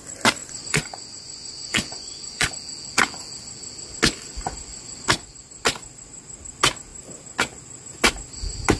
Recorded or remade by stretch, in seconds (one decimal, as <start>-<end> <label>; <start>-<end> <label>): 0.0-0.4 recorded; 0.4-2.5 remade; 2.5-8.8 recorded